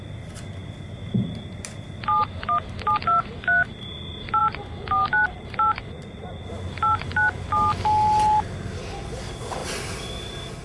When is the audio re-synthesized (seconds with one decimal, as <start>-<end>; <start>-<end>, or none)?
none